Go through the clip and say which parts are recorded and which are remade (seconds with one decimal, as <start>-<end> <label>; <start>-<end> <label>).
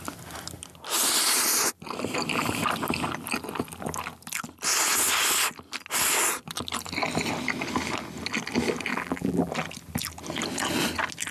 0.0-8.9 recorded; 8.9-9.5 remade; 9.5-11.3 recorded